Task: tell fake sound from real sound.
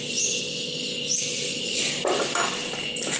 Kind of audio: real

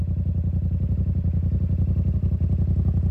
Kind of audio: real